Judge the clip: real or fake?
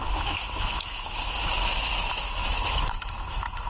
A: fake